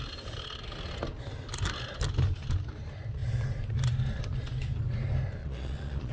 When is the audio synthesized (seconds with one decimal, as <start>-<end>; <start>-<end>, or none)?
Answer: 5.4-6.1

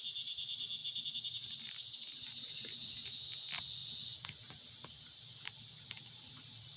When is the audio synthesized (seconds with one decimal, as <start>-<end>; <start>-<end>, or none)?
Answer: none